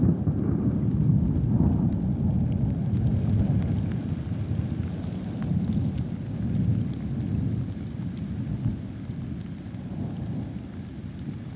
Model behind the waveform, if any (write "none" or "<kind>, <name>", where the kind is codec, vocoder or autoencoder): none